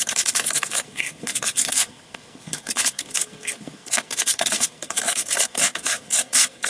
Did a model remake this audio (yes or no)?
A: yes